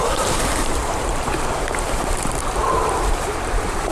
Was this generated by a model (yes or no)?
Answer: yes